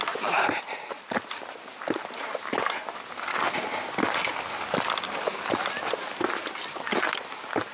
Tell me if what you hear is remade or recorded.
recorded